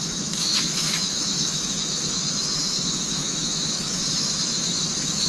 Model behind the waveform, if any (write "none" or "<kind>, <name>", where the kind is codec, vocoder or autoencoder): autoencoder, DAC-VAE